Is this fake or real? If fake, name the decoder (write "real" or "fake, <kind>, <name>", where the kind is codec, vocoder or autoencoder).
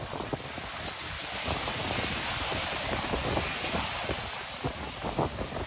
real